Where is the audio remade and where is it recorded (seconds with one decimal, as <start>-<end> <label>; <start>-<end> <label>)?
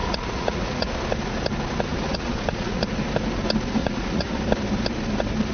0.0-0.9 remade; 0.9-1.9 recorded; 1.9-2.9 remade; 2.9-3.8 recorded; 3.8-4.4 remade; 4.4-5.5 recorded